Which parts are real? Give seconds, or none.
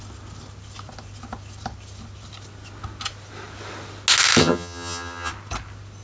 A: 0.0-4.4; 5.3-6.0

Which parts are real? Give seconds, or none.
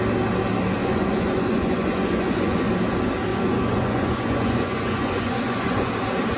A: 0.0-0.8; 2.7-3.3; 5.9-6.4